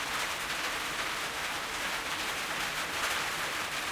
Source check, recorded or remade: recorded